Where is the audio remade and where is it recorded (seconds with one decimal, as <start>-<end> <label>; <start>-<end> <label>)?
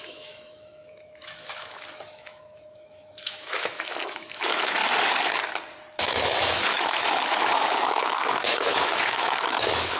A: 0.0-4.8 remade; 4.8-6.0 recorded; 6.0-10.0 remade